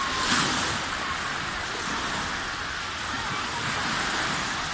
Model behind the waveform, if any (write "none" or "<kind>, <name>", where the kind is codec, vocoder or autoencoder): none